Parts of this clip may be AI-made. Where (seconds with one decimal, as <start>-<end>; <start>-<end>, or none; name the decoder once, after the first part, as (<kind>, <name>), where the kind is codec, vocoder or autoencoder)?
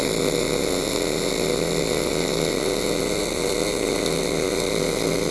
none